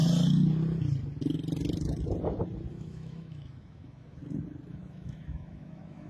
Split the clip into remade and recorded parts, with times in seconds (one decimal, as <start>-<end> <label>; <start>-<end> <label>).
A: 0.0-2.7 recorded; 2.7-4.2 remade; 4.2-4.7 recorded; 4.7-6.1 remade